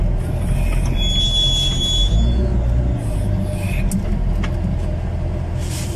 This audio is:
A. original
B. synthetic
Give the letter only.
A